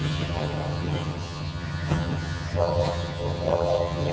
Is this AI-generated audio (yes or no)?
yes